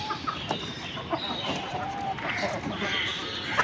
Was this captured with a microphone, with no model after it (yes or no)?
yes